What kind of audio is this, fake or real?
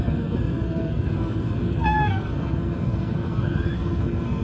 fake